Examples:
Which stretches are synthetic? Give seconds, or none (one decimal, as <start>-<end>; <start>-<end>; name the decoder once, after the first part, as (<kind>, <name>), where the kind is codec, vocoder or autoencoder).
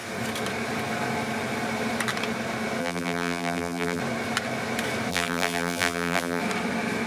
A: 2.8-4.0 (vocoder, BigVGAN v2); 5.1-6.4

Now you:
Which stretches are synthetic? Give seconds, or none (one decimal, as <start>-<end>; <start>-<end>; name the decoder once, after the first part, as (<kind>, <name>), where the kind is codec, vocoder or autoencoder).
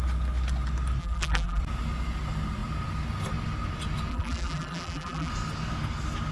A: 1.0-1.6 (vocoder, BigVGAN v2); 4.1-5.3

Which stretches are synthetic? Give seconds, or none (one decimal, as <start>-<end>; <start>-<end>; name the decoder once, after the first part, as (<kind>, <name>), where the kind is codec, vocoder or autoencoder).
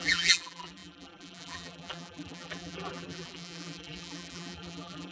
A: 0.0-5.1 (vocoder, BigVGAN v2)